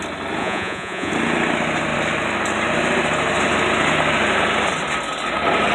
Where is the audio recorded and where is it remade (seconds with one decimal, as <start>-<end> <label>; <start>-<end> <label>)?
0.0-0.4 recorded; 0.4-1.1 remade; 1.1-5.7 recorded